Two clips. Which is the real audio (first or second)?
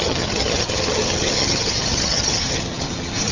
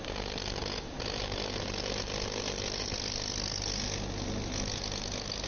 second